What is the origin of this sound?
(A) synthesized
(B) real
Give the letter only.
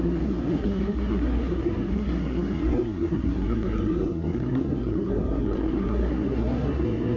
A